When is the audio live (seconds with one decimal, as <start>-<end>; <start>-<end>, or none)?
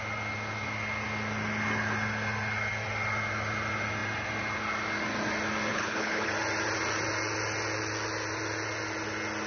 0.0-5.7; 6.3-9.5